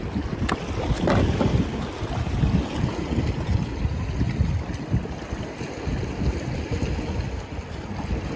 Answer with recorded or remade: recorded